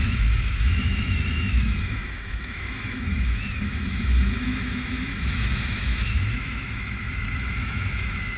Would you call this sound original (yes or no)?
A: no